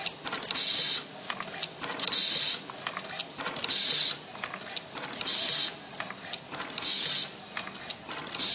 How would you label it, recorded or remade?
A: recorded